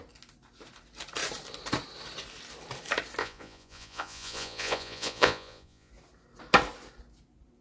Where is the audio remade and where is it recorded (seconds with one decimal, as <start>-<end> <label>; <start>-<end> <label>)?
0.0-3.2 recorded; 3.2-5.9 remade; 5.9-7.6 recorded